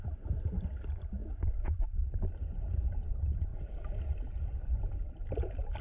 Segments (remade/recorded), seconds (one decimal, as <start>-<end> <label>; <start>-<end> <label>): 0.0-3.5 remade; 3.5-4.5 recorded; 4.5-5.8 remade